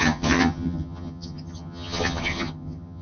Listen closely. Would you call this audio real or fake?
fake